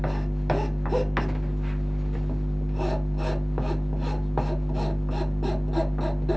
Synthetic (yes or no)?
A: no